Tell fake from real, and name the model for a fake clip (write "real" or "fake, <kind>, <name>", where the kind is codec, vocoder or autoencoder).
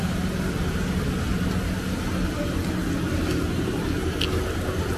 real